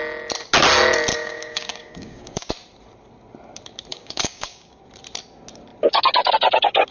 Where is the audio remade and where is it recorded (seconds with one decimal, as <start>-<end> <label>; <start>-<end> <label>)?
0.0-1.1 recorded; 1.1-2.5 remade; 2.5-3.9 recorded; 3.9-4.8 remade; 4.8-6.9 recorded